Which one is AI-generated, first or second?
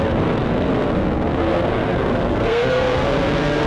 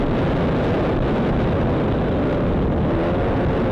first